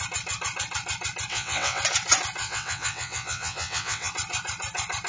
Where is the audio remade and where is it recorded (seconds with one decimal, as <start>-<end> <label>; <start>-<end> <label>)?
0.0-1.3 recorded; 1.3-1.8 remade; 1.8-2.4 recorded; 2.4-4.1 remade; 4.1-5.1 recorded